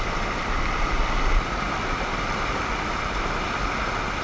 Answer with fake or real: real